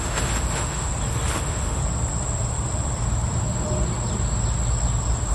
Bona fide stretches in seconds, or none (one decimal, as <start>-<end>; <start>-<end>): 0.9-1.4; 1.8-5.3